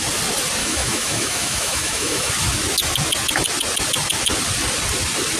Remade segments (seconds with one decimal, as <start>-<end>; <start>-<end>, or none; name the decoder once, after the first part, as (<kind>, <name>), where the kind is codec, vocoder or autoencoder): 0.6-2.3 (autoencoder, DAC-VAE)